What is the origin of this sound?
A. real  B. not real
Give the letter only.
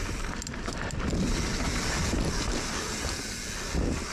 A